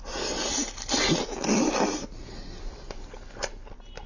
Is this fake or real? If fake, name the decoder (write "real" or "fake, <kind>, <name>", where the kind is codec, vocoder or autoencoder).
real